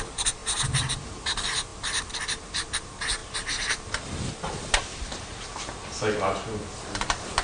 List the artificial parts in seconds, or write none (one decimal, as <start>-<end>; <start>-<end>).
0.0-0.4; 1.0-7.4